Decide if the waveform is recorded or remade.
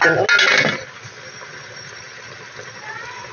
recorded